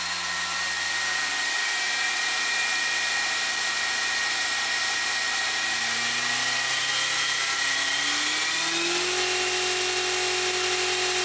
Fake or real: real